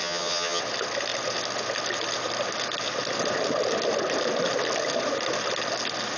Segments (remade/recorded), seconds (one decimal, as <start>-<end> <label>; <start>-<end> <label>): 0.0-0.6 remade; 0.6-6.2 recorded